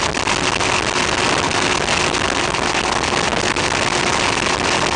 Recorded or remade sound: recorded